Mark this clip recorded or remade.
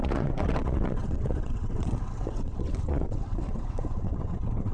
remade